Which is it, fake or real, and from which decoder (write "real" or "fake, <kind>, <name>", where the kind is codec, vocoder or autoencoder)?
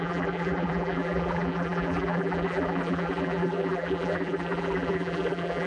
fake, vocoder, BigVGAN v2